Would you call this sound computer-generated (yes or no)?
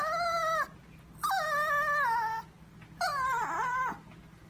no